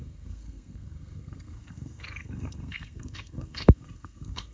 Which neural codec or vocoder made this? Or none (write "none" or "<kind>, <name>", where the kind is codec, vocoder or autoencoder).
codec, SNAC